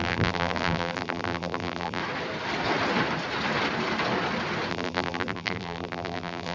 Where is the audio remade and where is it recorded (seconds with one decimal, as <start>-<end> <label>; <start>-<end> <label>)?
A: 0.0-2.0 remade; 2.0-4.7 recorded; 4.7-6.5 remade